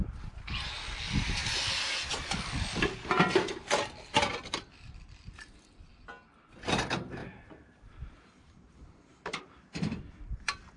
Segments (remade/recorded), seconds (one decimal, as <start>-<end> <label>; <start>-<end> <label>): 0.0-1.4 recorded; 1.4-2.2 remade; 2.2-4.3 recorded; 4.3-5.4 remade; 5.4-9.1 recorded; 9.1-10.0 remade; 10.0-10.8 recorded